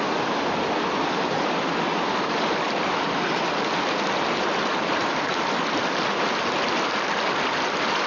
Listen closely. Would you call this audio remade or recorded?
recorded